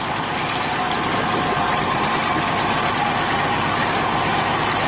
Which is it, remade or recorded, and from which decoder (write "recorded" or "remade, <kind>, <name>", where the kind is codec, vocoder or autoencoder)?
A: recorded